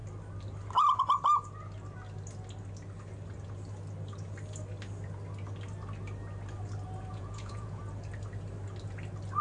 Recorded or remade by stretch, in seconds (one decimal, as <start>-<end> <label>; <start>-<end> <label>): 0.0-7.1 recorded; 7.1-7.8 remade; 7.8-9.4 recorded